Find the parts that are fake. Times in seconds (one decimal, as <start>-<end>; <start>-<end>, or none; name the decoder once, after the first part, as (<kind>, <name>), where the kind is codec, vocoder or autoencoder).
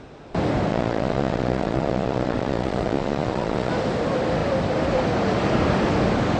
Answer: 0.7-3.7 (vocoder, Vocos)